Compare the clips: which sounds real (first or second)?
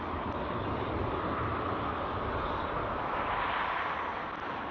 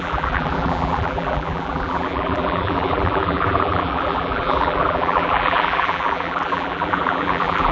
first